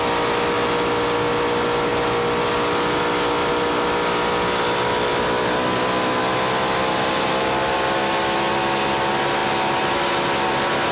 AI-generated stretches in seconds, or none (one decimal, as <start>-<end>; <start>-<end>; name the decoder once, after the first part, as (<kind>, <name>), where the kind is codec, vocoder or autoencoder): none